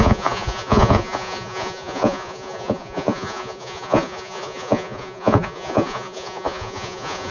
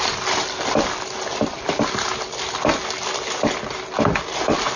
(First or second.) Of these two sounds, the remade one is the first